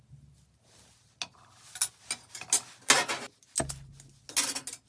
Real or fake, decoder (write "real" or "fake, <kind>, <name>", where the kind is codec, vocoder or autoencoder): real